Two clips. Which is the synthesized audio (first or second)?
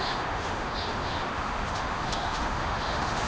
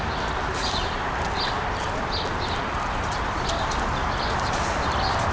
first